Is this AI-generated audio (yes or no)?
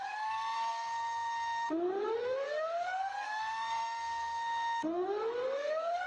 yes